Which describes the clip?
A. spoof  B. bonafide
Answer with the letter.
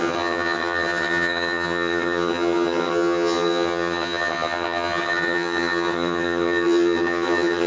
A